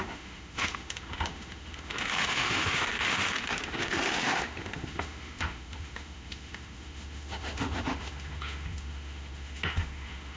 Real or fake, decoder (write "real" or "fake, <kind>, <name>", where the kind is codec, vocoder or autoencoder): fake, autoencoder, DAC-VAE